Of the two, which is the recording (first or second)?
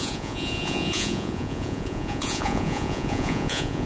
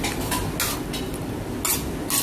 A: second